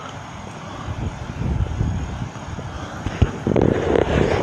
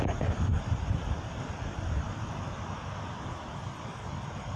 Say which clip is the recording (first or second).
first